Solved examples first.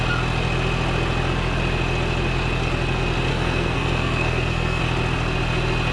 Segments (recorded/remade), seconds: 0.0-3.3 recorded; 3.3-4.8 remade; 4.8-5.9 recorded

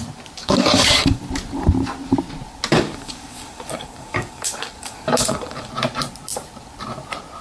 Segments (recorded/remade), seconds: 0.0-0.4 recorded; 0.4-1.2 remade; 1.2-2.7 recorded; 2.7-5.7 remade; 5.7-7.4 recorded

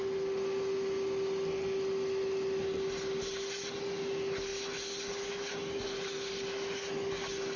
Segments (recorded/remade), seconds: 0.0-7.6 recorded

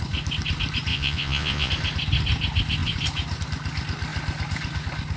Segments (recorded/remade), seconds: 0.0-0.9 recorded; 0.9-1.7 remade; 1.7-5.2 recorded

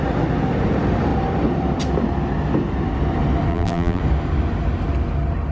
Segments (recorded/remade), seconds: 0.0-3.5 recorded; 3.5-4.0 remade; 4.0-5.5 recorded